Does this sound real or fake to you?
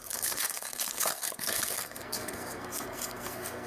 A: fake